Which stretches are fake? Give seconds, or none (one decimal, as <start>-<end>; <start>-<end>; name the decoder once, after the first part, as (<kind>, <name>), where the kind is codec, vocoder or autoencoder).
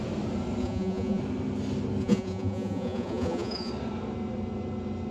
0.6-1.2 (vocoder, Vocos); 2.0-3.7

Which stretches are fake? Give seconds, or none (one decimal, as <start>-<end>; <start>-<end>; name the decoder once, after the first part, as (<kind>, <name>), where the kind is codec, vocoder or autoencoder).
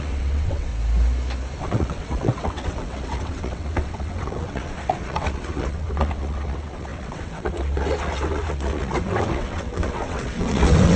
0.0-0.7 (vocoder, WaveNeXt); 1.6-11.0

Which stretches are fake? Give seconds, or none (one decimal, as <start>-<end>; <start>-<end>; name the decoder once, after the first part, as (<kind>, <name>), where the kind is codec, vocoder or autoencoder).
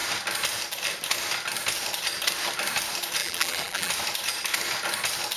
3.2-3.9 (vocoder, BigVGAN v2)